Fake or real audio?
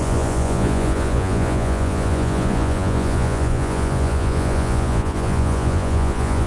fake